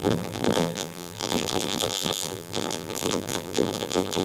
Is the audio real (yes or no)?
no